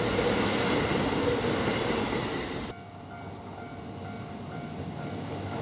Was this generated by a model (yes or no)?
no